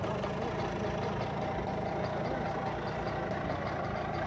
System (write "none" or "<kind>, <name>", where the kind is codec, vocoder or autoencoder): none